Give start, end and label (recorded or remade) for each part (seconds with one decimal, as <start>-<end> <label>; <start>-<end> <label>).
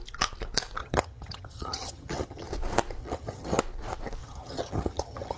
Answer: 0.0-0.8 recorded; 0.8-2.5 remade; 2.5-3.0 recorded; 3.0-3.6 remade; 3.6-4.2 recorded; 4.2-5.4 remade